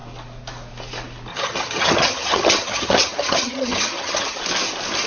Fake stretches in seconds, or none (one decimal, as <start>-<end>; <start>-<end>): 1.3-4.4